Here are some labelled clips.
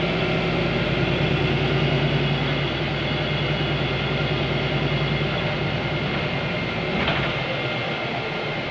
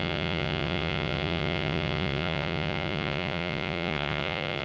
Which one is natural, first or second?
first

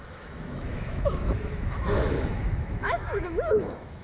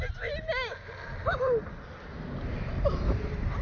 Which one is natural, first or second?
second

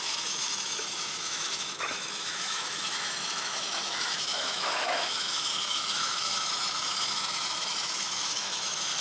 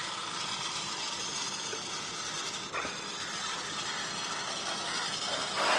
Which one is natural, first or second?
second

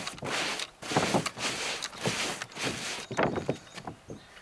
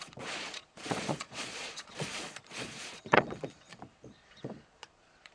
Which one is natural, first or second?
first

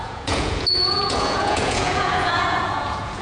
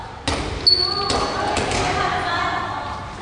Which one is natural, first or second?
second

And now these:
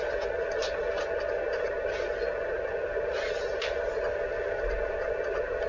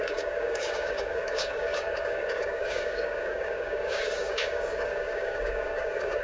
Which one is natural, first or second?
first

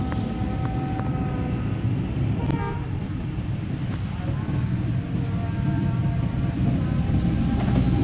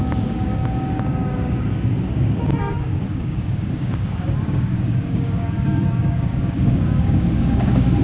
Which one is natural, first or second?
first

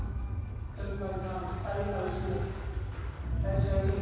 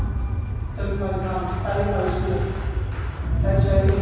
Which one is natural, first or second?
second